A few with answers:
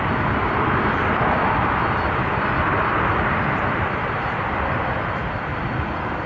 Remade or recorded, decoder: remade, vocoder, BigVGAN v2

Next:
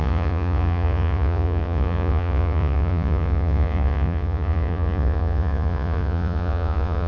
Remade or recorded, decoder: remade, vocoder, Vocos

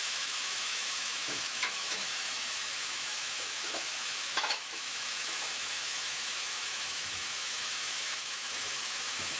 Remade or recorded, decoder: remade, autoencoder, DAC-VAE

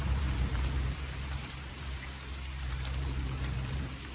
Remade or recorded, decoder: remade, vocoder, BigVGAN v2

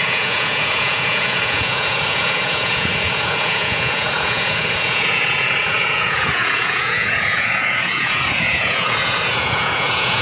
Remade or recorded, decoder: remade, vocoder, Vocos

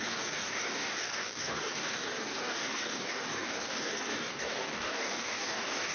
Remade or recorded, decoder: remade, codec, DAC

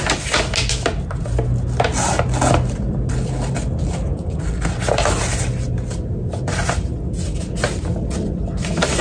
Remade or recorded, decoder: recorded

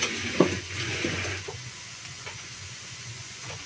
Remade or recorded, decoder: remade, vocoder, Vocos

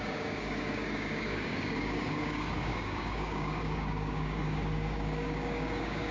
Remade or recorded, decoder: remade, codec, DAC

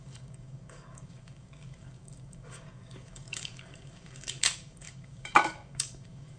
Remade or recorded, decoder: remade, codec, DAC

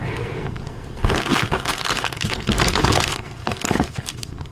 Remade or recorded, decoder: remade, codec, SNAC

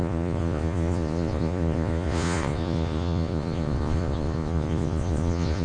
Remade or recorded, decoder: remade, vocoder, Vocos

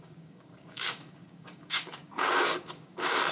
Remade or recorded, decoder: remade, codec, DAC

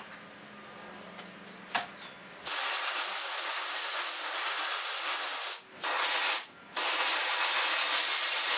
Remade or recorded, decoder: recorded